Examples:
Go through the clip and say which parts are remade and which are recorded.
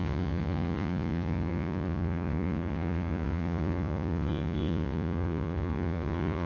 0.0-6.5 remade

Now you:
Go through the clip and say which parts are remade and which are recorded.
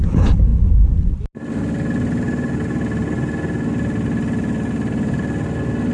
0.0-5.9 recorded